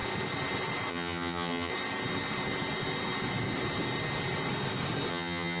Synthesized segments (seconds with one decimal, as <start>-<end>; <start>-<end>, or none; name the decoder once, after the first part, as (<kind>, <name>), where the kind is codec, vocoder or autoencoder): 0.9-1.7 (vocoder, HiFi-GAN); 5.1-5.6